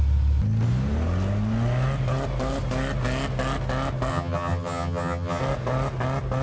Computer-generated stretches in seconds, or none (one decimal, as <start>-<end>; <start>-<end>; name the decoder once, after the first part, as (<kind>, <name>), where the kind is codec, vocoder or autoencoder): 4.1-5.4 (vocoder, HiFi-GAN)